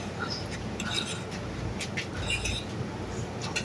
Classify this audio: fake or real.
real